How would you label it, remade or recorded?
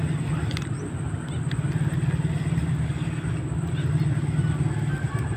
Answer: recorded